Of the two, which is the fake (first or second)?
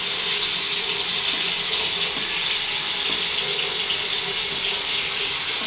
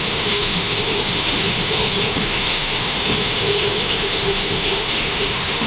second